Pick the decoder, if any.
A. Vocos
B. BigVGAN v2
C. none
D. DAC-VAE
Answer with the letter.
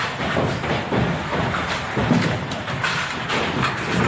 C